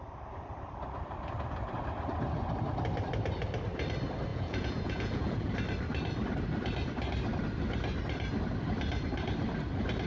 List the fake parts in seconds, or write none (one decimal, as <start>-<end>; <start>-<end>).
4.3-5.5